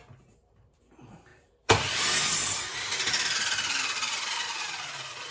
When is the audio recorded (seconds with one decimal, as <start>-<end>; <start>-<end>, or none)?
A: none